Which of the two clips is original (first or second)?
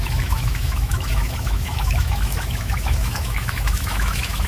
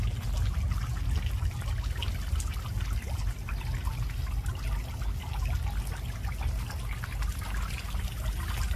second